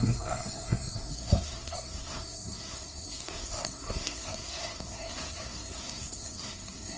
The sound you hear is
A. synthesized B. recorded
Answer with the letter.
A